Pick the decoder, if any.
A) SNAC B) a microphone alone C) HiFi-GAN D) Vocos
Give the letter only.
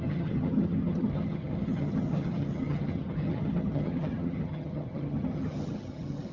C